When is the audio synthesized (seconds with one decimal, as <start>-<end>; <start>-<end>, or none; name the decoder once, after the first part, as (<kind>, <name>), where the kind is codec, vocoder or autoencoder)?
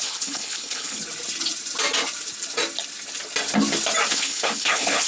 0.0-1.0 (codec, HILCodec); 4.1-5.1